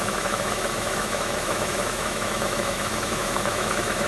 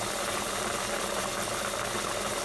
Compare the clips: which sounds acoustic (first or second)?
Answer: second